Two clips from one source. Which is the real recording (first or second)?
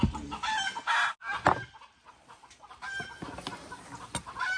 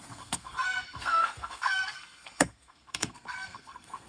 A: first